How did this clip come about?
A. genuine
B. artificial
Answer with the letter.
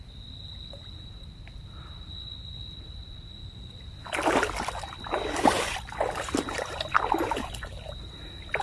A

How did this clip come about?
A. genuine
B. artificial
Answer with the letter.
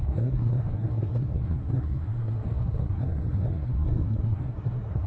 B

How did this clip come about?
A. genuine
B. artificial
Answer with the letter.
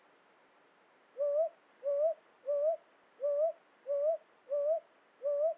A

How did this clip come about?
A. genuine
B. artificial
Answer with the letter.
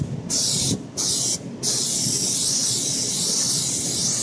A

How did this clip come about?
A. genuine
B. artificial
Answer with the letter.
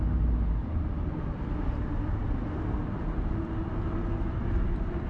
A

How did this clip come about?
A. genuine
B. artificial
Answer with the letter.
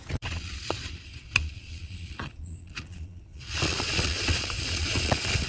B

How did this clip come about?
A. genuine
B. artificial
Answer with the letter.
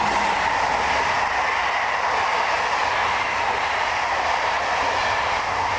A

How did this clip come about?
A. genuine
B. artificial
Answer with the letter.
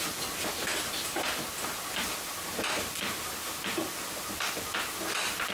A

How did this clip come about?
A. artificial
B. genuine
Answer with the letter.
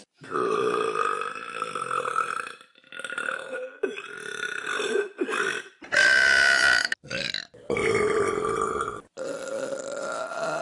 B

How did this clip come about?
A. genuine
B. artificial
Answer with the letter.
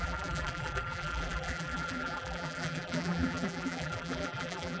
B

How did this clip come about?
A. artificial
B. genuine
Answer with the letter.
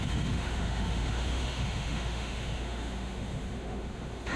A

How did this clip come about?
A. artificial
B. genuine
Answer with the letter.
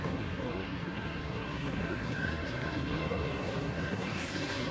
A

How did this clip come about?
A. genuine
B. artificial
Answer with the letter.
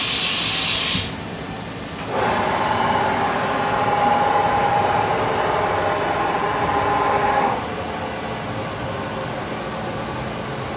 A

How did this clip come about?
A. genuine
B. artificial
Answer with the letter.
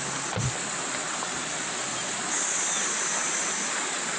A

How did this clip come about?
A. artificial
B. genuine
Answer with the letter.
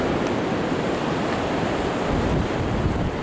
B